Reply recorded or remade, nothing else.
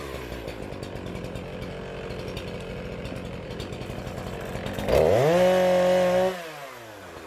recorded